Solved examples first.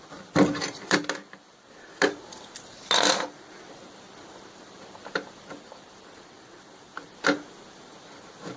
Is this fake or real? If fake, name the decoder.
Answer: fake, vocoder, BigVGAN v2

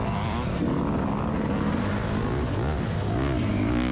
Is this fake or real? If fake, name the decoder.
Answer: real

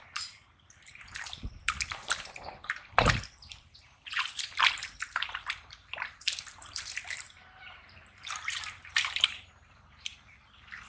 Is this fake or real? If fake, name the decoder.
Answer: fake, vocoder, BigVGAN v2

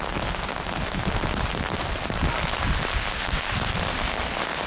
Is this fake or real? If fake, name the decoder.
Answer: real